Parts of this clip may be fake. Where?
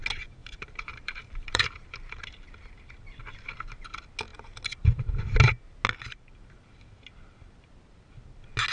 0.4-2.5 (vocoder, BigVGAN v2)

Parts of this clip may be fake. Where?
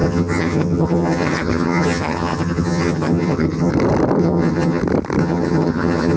0.0-3.7 (vocoder, HiFi-GAN); 4.2-4.8; 5.2-6.2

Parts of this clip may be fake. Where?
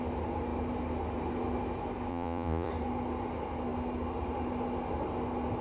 2.1-2.7 (vocoder, Vocos)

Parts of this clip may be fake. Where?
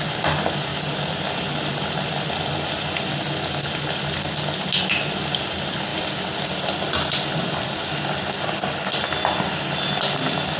none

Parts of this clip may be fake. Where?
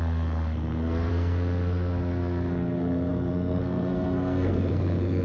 0.0-5.2 (codec, SNAC)